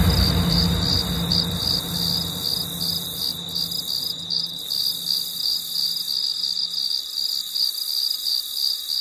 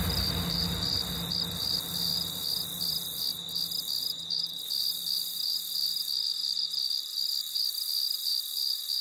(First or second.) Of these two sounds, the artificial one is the second